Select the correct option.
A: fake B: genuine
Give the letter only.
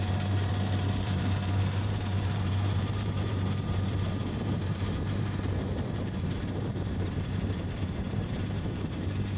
A